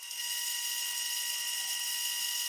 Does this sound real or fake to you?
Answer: real